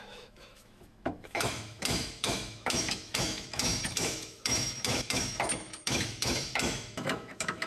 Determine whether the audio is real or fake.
fake